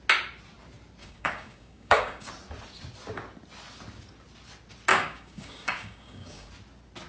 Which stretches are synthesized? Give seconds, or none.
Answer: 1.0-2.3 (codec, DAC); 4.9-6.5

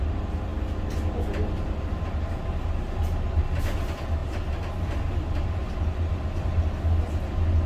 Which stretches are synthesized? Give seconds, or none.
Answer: none

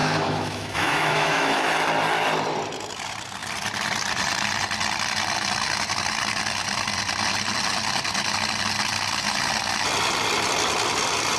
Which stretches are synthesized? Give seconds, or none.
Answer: 0.0-1.7 (autoencoder, DAC-VAE)

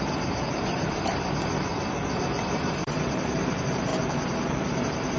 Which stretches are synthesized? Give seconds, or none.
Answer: 0.0-1.7 (vocoder, BigVGAN v2); 2.2-3.9; 4.5-5.2

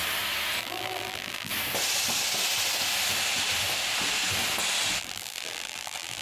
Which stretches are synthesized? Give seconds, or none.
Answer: 0.6-1.5 (vocoder, BigVGAN v2); 5.0-6.2

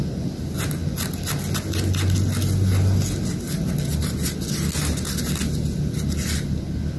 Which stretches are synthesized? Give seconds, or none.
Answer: none